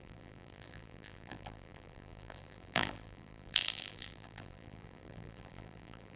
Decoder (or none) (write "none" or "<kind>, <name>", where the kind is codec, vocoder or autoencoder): vocoder, BigVGAN v2